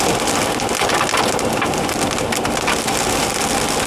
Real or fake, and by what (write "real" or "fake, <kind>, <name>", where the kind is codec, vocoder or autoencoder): real